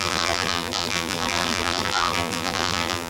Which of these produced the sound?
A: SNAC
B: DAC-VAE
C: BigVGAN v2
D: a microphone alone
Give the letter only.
C